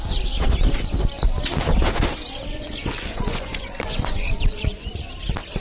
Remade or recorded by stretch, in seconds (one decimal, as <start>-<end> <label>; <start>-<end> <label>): 0.0-2.5 recorded; 2.5-4.9 remade; 4.9-5.6 recorded

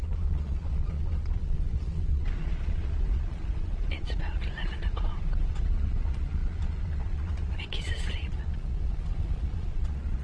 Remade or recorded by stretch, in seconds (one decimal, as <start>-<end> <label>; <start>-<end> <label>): 0.0-10.2 remade

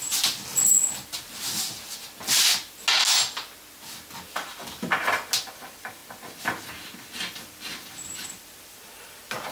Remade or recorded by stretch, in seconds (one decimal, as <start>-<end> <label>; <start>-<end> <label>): 0.0-0.5 remade; 0.5-5.4 recorded; 5.4-6.0 remade; 6.0-7.1 recorded; 7.1-9.5 remade